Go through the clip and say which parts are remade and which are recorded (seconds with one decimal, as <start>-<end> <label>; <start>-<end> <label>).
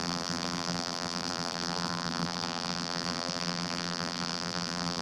0.0-5.0 remade